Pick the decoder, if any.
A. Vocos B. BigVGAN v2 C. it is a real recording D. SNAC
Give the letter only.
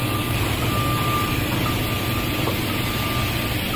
C